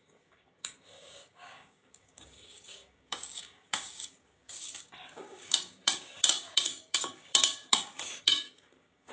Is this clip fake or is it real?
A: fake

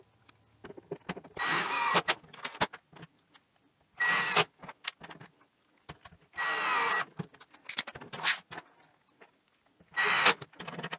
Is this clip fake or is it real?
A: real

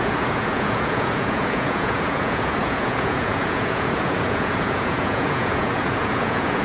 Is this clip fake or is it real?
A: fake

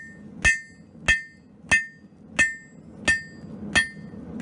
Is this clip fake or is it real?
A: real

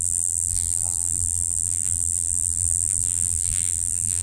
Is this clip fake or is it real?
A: fake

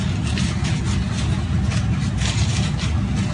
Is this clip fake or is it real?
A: real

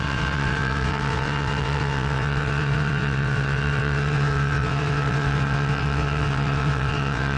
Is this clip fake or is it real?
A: fake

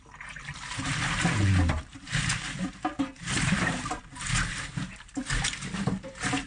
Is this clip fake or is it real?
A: fake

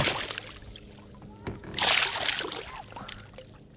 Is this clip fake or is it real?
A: real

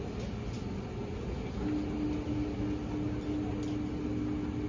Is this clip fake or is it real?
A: real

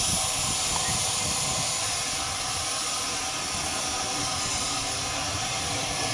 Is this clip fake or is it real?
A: real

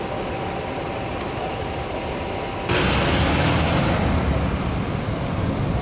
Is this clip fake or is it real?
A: real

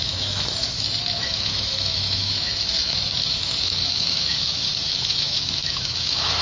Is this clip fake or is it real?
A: fake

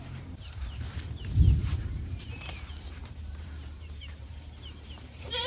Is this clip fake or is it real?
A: fake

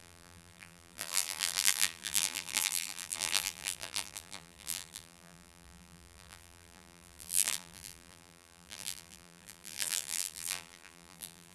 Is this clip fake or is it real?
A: fake